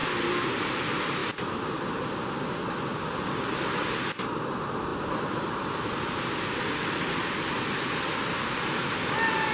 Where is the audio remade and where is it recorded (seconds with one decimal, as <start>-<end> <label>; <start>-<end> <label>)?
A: 0.0-9.5 recorded